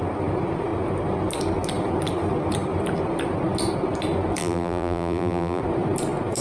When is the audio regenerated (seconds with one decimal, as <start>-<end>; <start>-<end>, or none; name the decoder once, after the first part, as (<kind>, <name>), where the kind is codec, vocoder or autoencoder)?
4.4-5.6 (vocoder, BigVGAN v2)